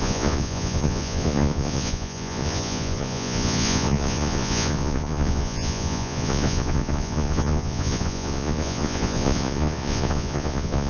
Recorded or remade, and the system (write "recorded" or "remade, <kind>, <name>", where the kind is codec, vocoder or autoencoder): remade, vocoder, Vocos